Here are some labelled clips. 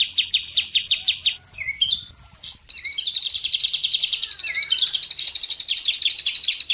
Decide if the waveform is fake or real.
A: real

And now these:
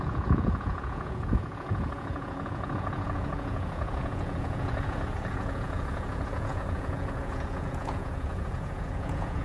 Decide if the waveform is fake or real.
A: fake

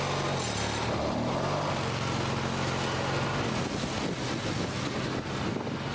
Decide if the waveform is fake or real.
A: real